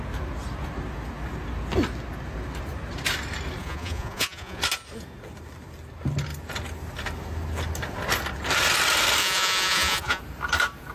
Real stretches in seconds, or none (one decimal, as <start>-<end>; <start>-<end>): 0.0-3.6; 4.6-9.2; 10.2-10.9